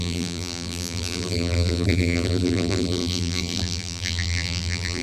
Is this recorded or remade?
remade